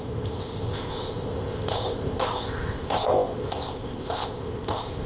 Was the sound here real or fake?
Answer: fake